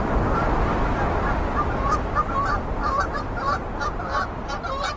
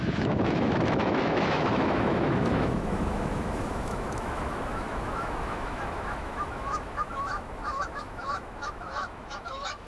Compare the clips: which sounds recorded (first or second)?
first